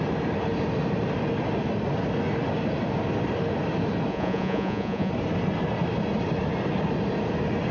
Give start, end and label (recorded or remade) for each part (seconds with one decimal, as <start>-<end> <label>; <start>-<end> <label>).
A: 0.0-4.1 recorded; 4.1-5.1 remade; 5.1-7.7 recorded